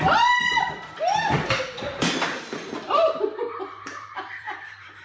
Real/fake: fake